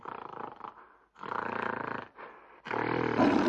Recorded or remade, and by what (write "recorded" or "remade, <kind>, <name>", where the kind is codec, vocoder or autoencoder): recorded